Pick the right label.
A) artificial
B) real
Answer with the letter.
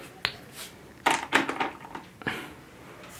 B